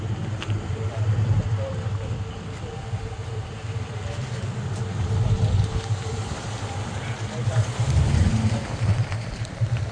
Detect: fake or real fake